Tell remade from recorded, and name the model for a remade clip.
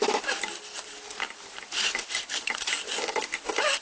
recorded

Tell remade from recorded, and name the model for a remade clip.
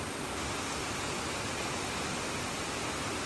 recorded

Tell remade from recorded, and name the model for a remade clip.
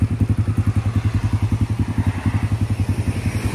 recorded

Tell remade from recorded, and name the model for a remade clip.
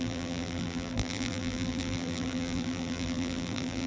remade, vocoder, BigVGAN v2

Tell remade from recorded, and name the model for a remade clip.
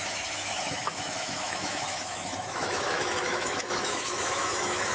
remade, autoencoder, DAC-VAE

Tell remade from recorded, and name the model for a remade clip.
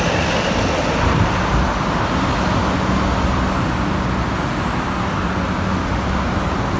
recorded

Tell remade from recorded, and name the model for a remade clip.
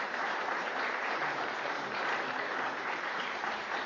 remade, vocoder, BigVGAN v2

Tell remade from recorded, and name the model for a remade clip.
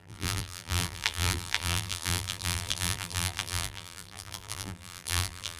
remade, vocoder, BigVGAN v2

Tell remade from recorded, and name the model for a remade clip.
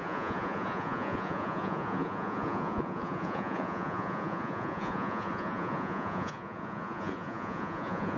remade, vocoder, Vocos